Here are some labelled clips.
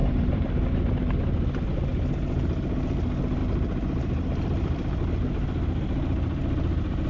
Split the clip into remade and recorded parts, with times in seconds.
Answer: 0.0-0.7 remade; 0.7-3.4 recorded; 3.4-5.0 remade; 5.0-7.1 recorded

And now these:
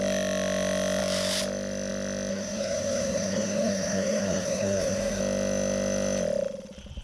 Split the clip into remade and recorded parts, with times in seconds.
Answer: 0.0-2.3 recorded; 2.3-5.2 remade; 5.2-7.0 recorded

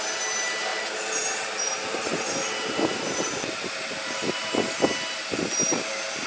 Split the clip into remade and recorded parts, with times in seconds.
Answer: 0.0-0.7 recorded; 0.7-3.4 remade; 3.4-6.3 recorded

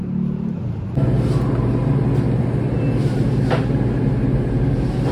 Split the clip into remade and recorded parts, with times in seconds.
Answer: 0.0-5.1 recorded